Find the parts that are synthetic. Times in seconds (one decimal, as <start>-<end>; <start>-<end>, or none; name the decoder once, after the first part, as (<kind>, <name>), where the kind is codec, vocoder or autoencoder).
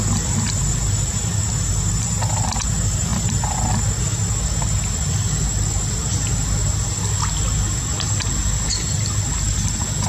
none